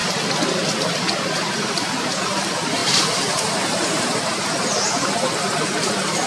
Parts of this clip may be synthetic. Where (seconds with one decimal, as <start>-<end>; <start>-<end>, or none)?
2.8-4.8